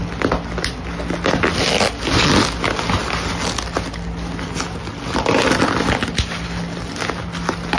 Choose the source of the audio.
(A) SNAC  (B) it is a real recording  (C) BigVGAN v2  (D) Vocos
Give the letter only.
B